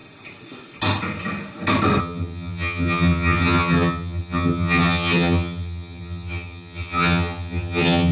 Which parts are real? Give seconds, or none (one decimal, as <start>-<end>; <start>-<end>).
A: 0.0-2.0